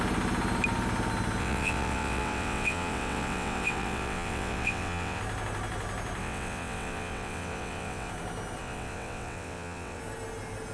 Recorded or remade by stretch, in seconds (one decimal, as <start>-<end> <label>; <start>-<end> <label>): 0.0-1.4 recorded; 1.4-5.2 remade; 5.2-6.2 recorded; 6.2-8.1 remade; 8.1-8.6 recorded; 8.6-10.0 remade; 10.0-10.7 recorded